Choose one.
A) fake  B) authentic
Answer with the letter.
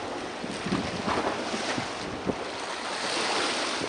B